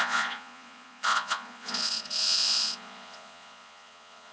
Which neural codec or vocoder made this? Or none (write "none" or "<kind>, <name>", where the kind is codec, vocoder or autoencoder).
vocoder, Vocos